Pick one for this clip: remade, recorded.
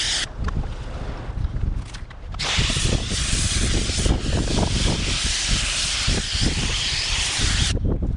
recorded